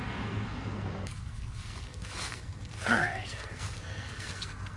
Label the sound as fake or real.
fake